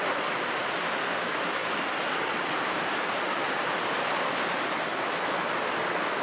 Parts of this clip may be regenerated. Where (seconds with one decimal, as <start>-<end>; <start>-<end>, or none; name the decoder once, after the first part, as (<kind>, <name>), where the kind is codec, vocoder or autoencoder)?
none